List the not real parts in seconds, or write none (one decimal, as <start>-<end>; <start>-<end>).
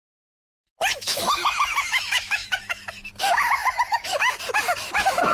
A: 0.9-5.3